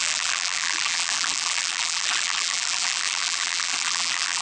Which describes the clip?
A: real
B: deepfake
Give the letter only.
B